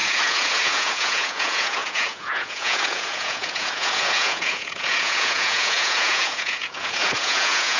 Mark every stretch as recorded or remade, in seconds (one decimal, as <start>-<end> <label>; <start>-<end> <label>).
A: 0.0-7.8 remade